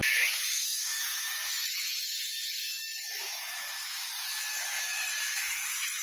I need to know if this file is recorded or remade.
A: remade